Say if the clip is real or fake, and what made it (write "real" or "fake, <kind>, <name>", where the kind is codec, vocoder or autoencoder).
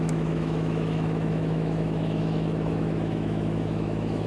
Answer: fake, autoencoder, DAC-VAE